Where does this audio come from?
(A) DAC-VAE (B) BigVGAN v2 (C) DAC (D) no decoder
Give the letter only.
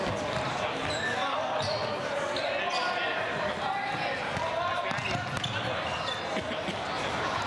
D